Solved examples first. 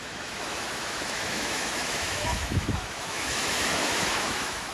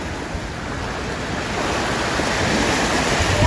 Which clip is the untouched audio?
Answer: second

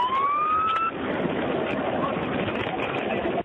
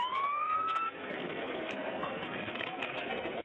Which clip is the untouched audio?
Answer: first